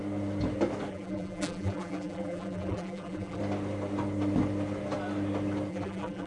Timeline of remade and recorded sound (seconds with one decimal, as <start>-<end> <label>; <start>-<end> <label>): 0.0-0.9 recorded; 0.9-3.4 remade; 3.4-5.7 recorded; 5.7-6.3 remade